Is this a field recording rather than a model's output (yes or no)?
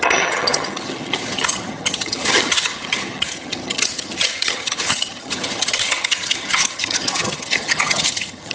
no